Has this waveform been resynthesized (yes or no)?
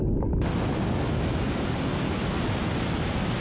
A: no